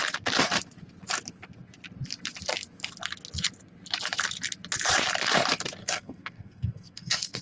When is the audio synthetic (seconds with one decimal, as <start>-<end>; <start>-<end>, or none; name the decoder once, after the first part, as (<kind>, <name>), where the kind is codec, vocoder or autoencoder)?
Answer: 5.8-7.4 (codec, SNAC)